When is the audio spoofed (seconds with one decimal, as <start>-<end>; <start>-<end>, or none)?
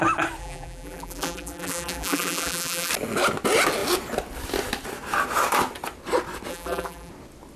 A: 0.4-2.9; 6.5-7.1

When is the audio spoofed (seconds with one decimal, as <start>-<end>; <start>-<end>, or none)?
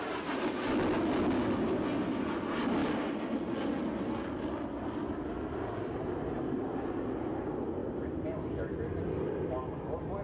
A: 2.8-3.4; 7.8-8.8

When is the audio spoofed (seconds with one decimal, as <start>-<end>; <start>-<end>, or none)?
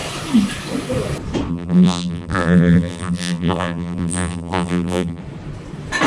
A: 1.5-5.2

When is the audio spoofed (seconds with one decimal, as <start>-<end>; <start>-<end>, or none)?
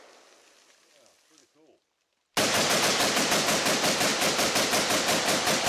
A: 4.1-5.7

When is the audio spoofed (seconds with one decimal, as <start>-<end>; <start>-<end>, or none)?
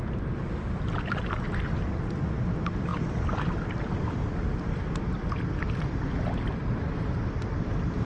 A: none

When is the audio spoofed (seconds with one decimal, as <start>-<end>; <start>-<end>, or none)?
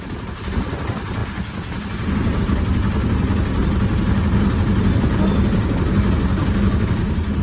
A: 6.4-7.4